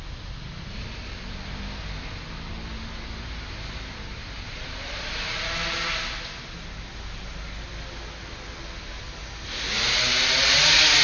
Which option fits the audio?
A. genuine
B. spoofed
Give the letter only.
A